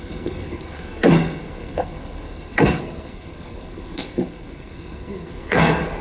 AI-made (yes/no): yes